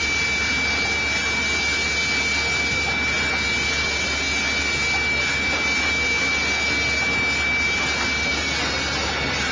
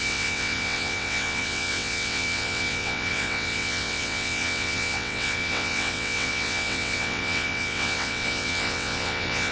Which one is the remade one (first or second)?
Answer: second